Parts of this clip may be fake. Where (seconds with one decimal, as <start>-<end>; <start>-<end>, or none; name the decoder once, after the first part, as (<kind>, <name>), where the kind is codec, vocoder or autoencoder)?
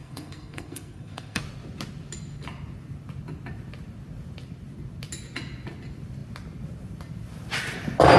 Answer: 0.0-1.4 (codec, SNAC)